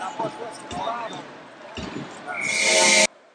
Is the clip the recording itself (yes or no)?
yes